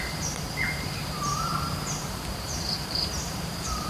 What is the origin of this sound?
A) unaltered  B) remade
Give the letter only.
B